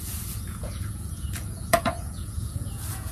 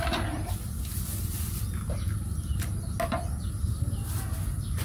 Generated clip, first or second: first